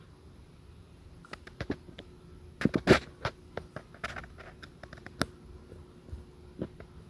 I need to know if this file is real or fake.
real